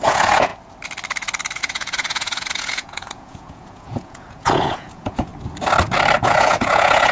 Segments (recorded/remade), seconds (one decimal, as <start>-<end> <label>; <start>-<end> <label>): 0.0-0.5 remade; 0.5-1.6 recorded; 1.6-5.3 remade; 5.3-6.2 recorded; 6.2-7.1 remade